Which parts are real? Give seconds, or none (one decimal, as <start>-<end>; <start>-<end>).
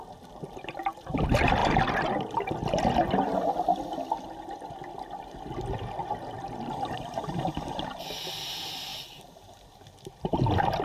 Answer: 0.0-8.9; 10.4-10.8